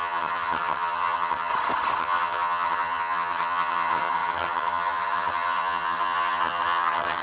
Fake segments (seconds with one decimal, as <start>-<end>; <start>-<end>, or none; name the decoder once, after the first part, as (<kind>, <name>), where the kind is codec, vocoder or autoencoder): 0.0-1.5 (vocoder, HiFi-GAN); 2.0-7.2